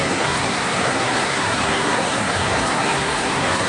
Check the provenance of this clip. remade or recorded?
remade